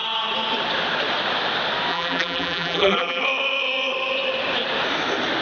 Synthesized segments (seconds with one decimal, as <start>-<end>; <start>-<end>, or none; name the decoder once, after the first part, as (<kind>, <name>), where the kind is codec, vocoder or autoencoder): 1.9-3.2 (vocoder, BigVGAN v2)